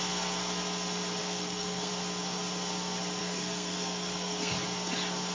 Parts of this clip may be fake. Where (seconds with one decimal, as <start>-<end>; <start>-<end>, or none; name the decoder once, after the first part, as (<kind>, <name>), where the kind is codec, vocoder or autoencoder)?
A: 1.2-1.9 (codec, SNAC); 3.2-4.5